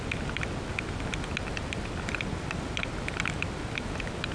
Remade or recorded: recorded